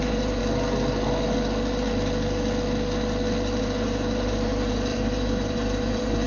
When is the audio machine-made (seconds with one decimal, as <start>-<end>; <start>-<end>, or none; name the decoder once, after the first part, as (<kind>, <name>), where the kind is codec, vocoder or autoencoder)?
0.0-0.4 (vocoder, BigVGAN v2); 3.6-6.3